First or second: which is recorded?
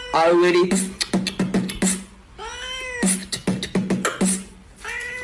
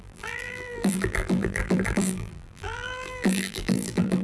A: first